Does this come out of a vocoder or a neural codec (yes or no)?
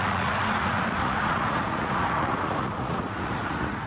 yes